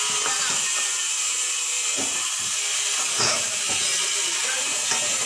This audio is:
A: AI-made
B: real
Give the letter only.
B